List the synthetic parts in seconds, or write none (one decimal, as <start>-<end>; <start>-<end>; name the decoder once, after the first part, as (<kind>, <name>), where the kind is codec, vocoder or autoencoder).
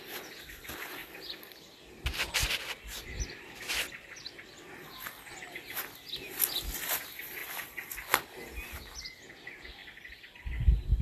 1.0-5.5 (vocoder, BigVGAN v2); 9.8-10.4